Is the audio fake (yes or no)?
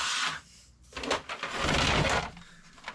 no